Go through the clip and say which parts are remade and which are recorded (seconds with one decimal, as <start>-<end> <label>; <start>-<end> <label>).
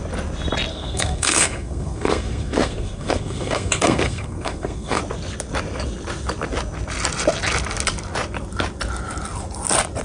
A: 0.0-0.7 recorded; 0.7-5.0 remade; 5.0-10.0 recorded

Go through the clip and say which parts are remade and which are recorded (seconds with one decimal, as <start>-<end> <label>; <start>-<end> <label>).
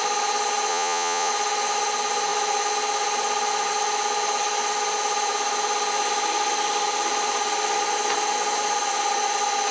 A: 0.0-0.7 recorded; 0.7-1.3 remade; 1.3-9.7 recorded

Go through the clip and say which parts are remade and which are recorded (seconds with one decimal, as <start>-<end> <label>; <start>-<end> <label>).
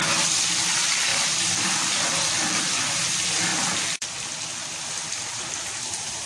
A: 0.0-1.1 recorded; 1.1-2.6 remade; 2.6-3.5 recorded; 3.5-5.3 remade; 5.3-6.3 recorded